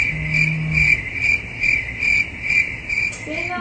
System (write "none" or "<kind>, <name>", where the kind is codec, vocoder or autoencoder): none